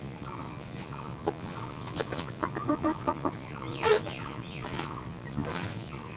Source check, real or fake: fake